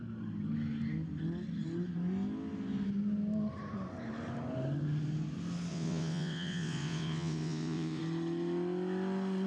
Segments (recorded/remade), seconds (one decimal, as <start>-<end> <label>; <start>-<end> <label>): 0.0-5.7 recorded; 5.7-8.0 remade; 8.0-9.5 recorded